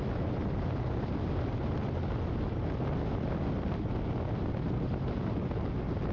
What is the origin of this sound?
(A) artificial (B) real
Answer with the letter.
B